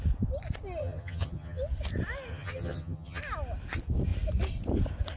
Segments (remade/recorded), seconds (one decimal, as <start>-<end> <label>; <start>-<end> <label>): 0.0-0.8 recorded; 0.8-1.6 remade; 1.6-2.3 recorded; 2.3-3.2 remade; 3.2-5.2 recorded